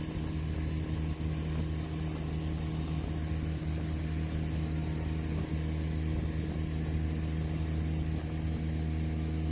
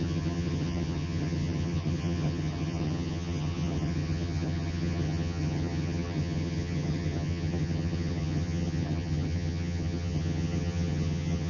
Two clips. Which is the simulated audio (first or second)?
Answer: second